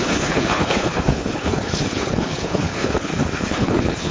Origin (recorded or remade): remade